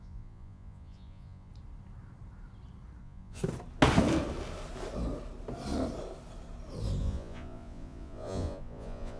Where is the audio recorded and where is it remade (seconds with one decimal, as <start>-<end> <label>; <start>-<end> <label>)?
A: 0.0-1.5 remade; 1.5-3.0 recorded; 3.0-3.4 remade; 3.4-7.0 recorded; 7.0-9.2 remade